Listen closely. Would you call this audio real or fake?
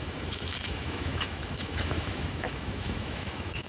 fake